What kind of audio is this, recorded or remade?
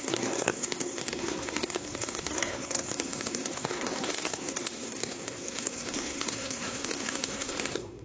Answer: remade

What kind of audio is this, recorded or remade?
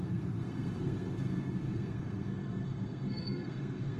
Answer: remade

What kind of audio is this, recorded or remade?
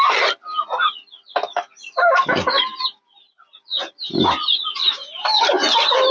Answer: recorded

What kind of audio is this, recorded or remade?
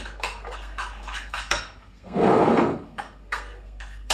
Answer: remade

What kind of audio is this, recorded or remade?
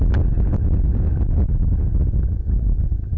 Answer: recorded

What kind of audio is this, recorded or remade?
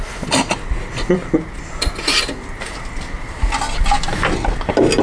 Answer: recorded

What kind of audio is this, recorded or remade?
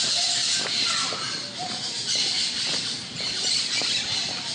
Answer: recorded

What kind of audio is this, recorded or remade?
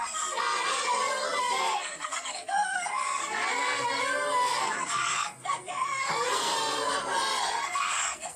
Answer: remade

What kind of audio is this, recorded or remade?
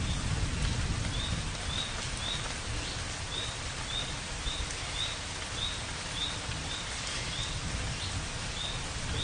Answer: recorded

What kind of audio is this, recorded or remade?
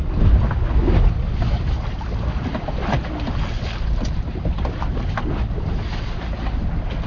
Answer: recorded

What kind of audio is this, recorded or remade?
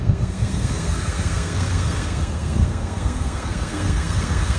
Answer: remade